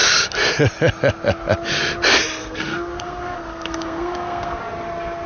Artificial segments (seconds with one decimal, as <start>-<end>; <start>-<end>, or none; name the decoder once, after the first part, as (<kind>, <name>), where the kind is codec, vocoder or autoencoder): 2.4-4.6 (codec, SNAC)